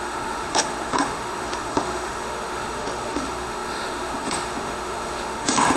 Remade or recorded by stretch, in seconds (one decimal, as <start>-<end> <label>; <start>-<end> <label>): 0.0-5.8 remade

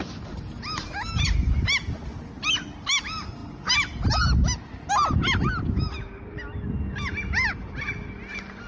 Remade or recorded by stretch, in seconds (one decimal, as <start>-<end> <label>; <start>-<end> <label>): 0.0-8.7 recorded

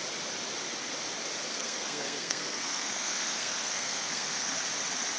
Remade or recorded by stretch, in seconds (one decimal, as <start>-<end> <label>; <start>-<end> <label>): 0.0-1.5 recorded; 1.5-4.6 remade; 4.6-5.2 recorded

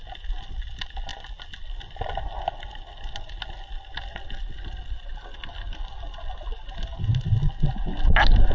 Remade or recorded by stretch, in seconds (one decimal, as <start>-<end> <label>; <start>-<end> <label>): 0.0-8.5 recorded